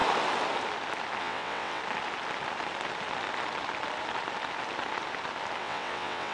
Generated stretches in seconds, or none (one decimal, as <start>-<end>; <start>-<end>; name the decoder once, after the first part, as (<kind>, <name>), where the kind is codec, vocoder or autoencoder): 1.2-1.8 (vocoder, WaveNeXt); 5.6-6.3